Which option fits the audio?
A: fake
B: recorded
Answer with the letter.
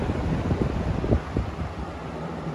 A